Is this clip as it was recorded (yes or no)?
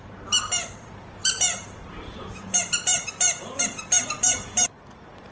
no